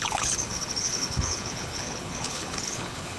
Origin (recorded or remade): remade